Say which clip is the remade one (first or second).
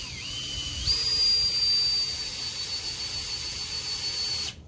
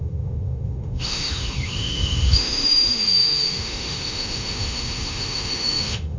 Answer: second